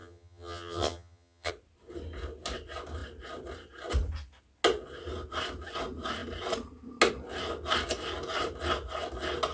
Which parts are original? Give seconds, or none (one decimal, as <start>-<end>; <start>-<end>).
1.5-9.5